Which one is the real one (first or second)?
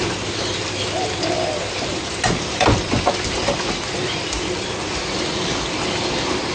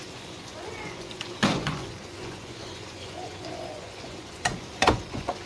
first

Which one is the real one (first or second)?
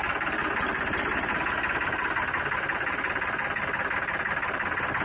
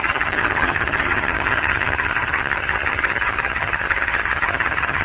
first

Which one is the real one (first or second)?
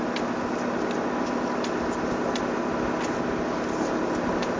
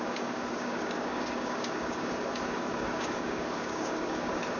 first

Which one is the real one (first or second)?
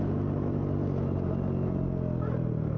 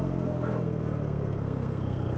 first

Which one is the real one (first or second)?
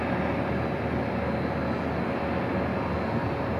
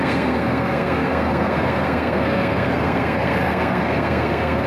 first